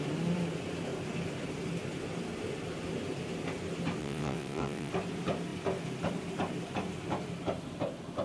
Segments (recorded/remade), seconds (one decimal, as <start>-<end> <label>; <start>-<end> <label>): 0.0-4.0 recorded; 4.0-4.9 remade; 4.9-8.2 recorded